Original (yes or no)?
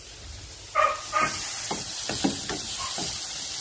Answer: yes